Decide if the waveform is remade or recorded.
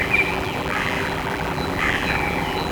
remade